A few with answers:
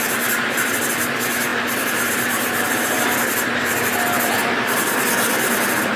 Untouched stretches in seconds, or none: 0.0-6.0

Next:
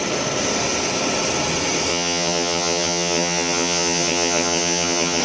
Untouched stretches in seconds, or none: 0.0-1.9

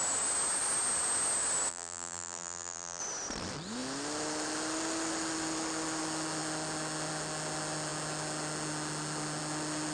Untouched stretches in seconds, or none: 0.0-1.7; 3.0-9.9

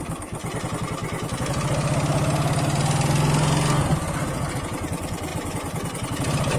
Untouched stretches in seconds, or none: 0.0-6.6

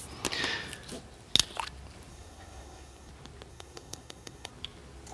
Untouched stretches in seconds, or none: 0.0-2.1; 3.1-3.5; 4.5-5.1

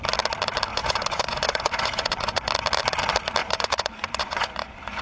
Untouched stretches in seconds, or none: 0.0-0.7; 2.5-3.4

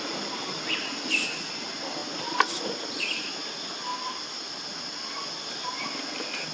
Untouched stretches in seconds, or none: 0.0-6.5

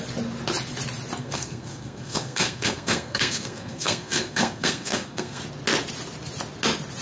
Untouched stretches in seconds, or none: 0.0-1.2; 5.4-7.0